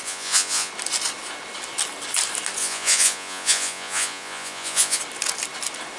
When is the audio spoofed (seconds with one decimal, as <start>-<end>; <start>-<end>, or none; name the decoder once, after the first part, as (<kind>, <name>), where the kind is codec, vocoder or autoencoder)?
0.0-0.7 (vocoder, Vocos); 2.6-5.0